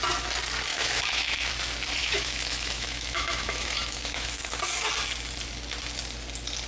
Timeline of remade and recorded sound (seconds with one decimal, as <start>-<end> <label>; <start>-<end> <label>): 0.0-0.7 recorded; 0.7-1.5 remade; 1.5-2.0 recorded; 2.0-4.5 remade; 4.5-6.7 recorded